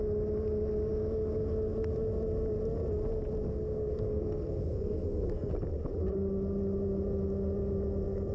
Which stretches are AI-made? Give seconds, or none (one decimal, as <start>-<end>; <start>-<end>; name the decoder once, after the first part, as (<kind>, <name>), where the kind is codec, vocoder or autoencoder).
3.5-5.5 (codec, SNAC)